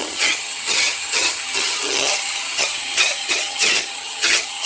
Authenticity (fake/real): fake